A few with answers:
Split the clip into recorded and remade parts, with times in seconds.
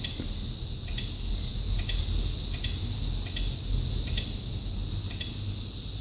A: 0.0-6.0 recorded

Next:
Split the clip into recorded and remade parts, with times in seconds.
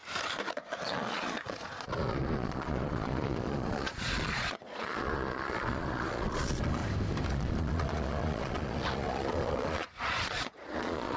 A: 0.0-0.5 recorded; 0.5-6.8 remade; 6.8-7.3 recorded; 7.3-11.2 remade